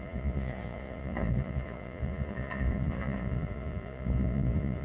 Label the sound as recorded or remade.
remade